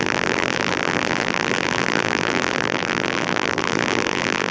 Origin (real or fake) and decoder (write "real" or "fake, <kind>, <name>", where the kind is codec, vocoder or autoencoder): fake, vocoder, BigVGAN v2